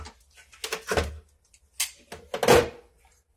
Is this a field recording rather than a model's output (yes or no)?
yes